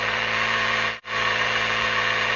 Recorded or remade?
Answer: remade